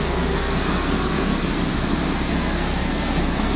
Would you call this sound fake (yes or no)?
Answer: yes